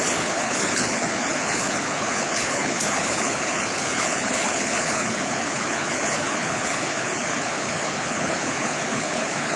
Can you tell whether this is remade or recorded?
remade